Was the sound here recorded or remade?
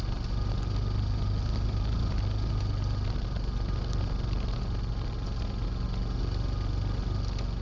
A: recorded